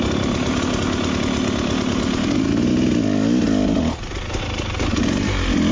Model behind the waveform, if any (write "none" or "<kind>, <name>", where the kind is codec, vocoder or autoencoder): none